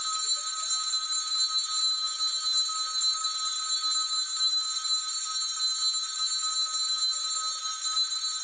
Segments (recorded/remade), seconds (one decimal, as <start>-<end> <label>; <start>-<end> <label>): 0.0-8.4 recorded